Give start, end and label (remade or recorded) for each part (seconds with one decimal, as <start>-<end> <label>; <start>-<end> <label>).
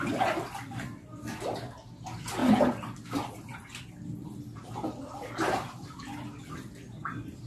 0.0-7.5 recorded